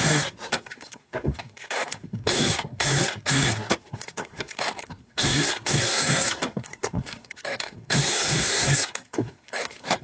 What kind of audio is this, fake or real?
fake